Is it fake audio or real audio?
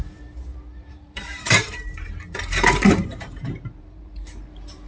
fake